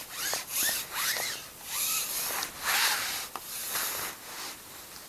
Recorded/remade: remade